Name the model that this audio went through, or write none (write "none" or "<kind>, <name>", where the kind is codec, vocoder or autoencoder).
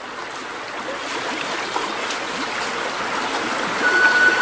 none